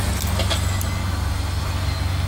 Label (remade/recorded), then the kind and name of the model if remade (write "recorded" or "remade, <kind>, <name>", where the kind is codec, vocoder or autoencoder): recorded